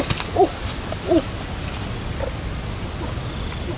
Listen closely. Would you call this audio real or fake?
real